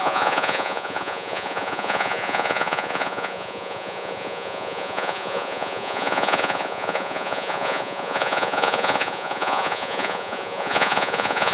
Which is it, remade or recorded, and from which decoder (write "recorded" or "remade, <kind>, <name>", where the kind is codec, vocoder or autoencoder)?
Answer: remade, vocoder, Vocos